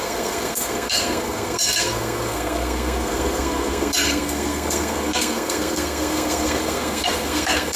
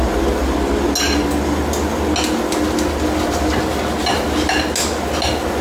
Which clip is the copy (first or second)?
first